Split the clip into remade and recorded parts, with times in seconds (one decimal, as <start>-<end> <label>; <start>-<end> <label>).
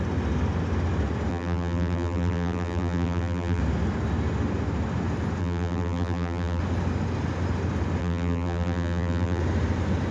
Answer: 0.0-1.3 recorded; 1.3-3.6 remade; 3.6-5.4 recorded; 5.4-6.6 remade; 6.6-8.0 recorded; 8.0-9.4 remade; 9.4-10.1 recorded